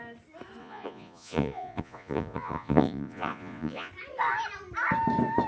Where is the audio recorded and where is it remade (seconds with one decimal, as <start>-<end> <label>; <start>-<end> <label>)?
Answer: 0.0-0.6 recorded; 0.6-3.9 remade; 3.9-5.5 recorded